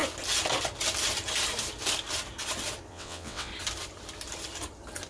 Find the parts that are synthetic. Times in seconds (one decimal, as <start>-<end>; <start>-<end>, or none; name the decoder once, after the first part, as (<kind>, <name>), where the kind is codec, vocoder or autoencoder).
2.9-3.5 (vocoder, WaveNeXt)